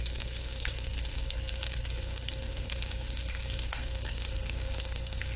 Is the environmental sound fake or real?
fake